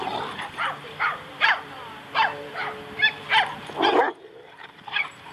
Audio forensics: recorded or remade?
remade